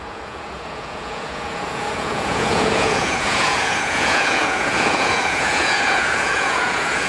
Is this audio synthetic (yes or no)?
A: yes